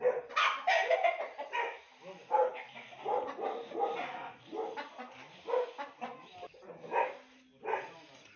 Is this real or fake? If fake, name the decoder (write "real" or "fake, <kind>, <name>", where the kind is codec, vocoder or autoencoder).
real